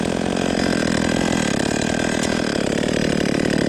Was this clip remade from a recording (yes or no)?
yes